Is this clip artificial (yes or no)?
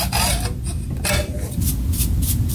no